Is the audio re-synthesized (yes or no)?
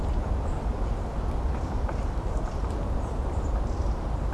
no